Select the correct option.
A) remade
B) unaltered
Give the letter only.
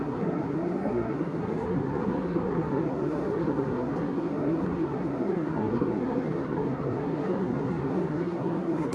A